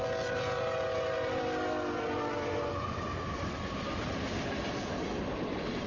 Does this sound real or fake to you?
real